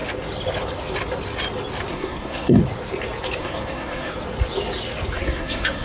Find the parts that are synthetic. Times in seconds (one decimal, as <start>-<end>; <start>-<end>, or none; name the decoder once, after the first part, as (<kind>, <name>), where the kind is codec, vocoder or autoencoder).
1.9-2.6 (codec, SNAC); 3.4-4.1; 5.2-5.8